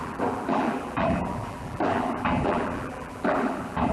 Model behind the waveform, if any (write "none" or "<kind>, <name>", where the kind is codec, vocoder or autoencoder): vocoder, BigVGAN v2